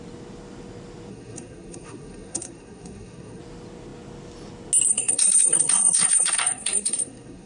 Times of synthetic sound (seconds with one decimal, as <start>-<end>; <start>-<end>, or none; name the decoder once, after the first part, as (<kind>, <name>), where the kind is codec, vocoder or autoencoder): 1.1-3.4 (codec, SNAC); 4.9-7.5